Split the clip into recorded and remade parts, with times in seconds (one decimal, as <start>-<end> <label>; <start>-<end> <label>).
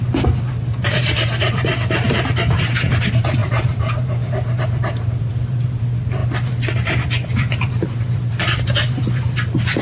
0.0-9.8 remade